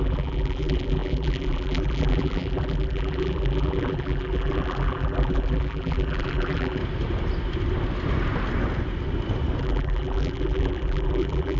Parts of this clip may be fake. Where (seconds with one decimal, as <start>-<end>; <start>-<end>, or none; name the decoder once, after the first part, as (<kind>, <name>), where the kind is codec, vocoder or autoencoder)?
0.0-6.8 (vocoder, BigVGAN v2); 9.6-11.6